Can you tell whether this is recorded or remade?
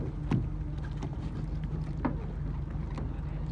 recorded